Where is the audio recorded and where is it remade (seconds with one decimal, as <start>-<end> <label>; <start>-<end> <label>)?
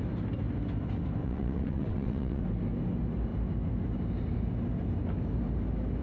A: 0.0-1.2 recorded; 1.2-2.4 remade; 2.4-6.0 recorded